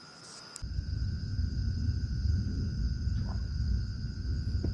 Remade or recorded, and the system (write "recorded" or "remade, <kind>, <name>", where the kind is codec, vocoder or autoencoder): recorded